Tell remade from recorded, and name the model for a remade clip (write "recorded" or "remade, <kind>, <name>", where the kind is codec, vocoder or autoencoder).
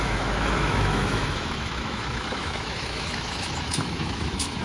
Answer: remade, autoencoder, DAC-VAE